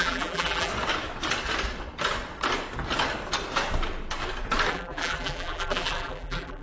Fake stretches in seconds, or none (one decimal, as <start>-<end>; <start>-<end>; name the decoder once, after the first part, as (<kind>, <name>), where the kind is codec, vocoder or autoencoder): 0.0-0.7 (vocoder, BigVGAN v2); 4.7-6.6